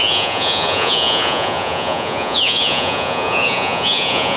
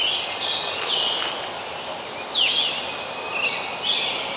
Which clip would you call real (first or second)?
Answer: second